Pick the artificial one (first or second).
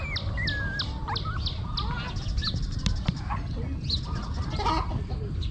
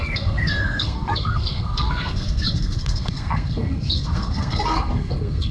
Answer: second